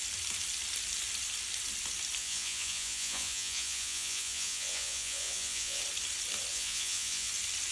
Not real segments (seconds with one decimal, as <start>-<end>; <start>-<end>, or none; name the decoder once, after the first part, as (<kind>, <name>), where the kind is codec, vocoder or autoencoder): 2.2-5.8 (vocoder, Vocos); 6.5-7.3

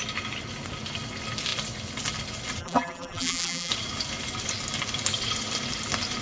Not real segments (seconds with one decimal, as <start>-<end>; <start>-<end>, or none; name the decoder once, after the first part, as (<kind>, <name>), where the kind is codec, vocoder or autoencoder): 2.6-3.7 (vocoder, BigVGAN v2)

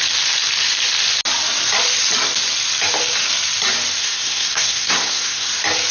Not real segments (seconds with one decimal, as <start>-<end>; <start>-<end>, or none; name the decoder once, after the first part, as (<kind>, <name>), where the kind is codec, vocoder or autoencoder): 4.0-5.5 (codec, SNAC)